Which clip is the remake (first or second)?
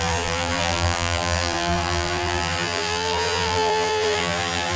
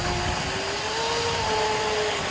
first